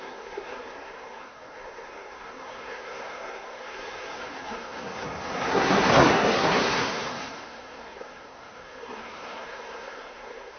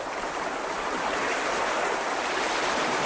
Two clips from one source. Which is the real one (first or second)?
second